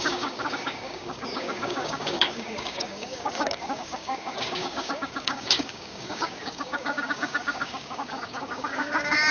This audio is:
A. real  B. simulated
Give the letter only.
B